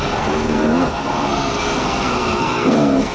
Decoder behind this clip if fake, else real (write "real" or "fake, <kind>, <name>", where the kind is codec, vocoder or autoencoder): fake, codec, SNAC